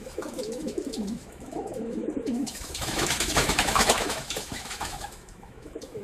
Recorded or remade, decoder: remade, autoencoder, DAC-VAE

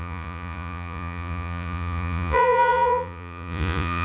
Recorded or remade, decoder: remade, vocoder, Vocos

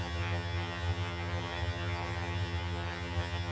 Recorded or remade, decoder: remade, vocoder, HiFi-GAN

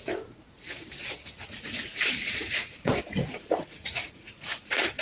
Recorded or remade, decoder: remade, vocoder, Vocos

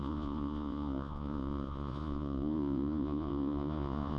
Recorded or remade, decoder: remade, vocoder, Vocos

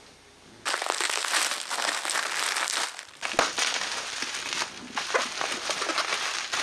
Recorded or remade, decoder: recorded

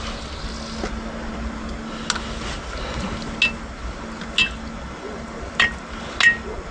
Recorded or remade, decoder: recorded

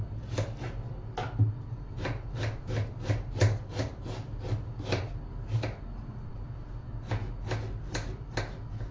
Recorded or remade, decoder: recorded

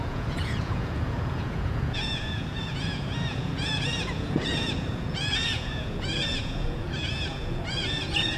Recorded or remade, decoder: remade, vocoder, Vocos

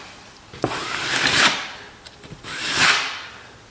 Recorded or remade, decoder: remade, vocoder, BigVGAN v2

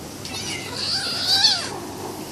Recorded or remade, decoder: recorded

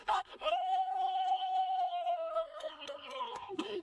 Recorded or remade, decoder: remade, codec, SNAC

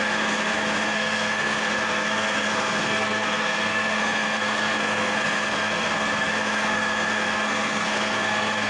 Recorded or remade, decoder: remade, codec, SNAC